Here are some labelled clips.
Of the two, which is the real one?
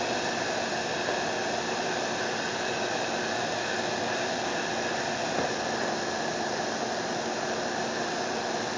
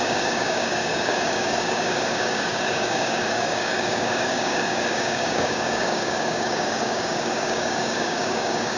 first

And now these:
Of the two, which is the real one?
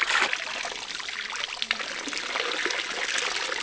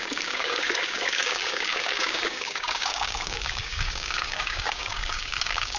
first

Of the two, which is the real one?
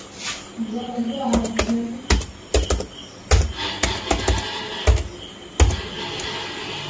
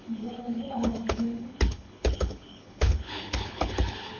first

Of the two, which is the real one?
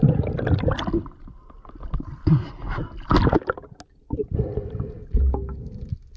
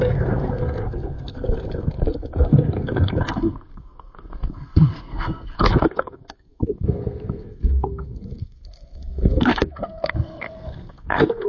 first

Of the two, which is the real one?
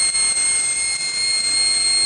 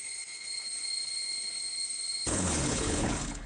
first